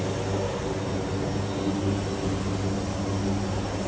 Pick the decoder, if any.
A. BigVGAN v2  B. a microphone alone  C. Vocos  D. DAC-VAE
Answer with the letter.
B